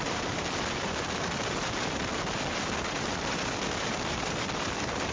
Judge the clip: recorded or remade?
recorded